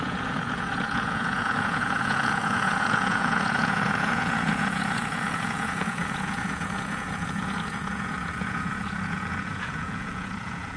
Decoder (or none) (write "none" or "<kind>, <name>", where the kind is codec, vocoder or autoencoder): vocoder, Vocos